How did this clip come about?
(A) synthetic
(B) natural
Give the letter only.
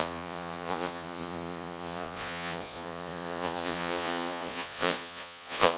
A